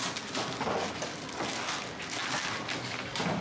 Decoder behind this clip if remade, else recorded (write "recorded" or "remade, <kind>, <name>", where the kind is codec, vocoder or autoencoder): recorded